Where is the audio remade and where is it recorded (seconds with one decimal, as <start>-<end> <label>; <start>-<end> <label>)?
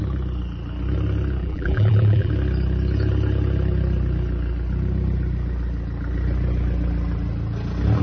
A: 0.0-1.4 recorded; 1.4-2.3 remade; 2.3-8.0 recorded